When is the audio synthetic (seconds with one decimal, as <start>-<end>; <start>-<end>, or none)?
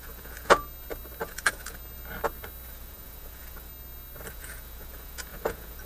0.0-0.6; 1.2-1.8; 2.7-3.7; 4.3-5.9